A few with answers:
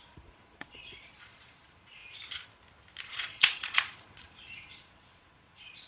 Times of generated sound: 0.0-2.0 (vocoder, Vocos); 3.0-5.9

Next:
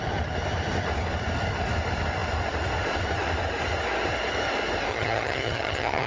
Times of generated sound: 4.9-6.1 (vocoder, HiFi-GAN)

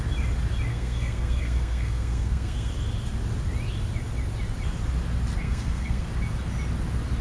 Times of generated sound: 0.7-2.7 (codec, SNAC); 5.4-6.1